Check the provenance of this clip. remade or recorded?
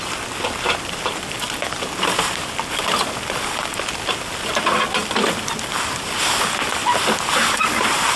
recorded